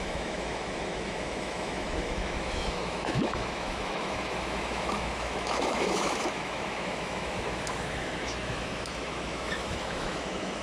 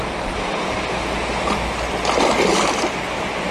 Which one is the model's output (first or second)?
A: first